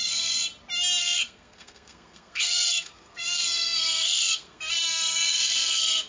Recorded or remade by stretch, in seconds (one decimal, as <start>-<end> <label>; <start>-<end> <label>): 0.0-0.5 remade; 0.5-1.0 recorded; 1.0-6.1 remade